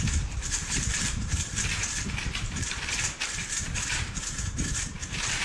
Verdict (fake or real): fake